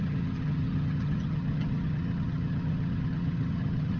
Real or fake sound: fake